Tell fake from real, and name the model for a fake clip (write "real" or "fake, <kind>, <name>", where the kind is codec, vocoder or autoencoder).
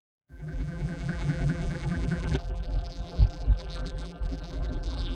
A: fake, vocoder, BigVGAN v2